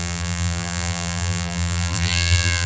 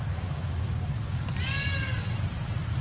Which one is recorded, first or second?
second